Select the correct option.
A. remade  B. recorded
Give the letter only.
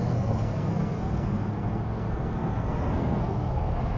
A